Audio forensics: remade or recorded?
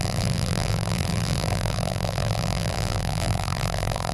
remade